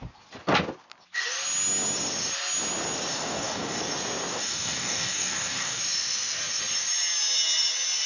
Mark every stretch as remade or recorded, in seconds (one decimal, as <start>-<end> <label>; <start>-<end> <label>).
0.0-3.1 recorded; 3.1-3.8 remade; 3.8-4.3 recorded; 4.3-5.8 remade; 5.8-8.1 recorded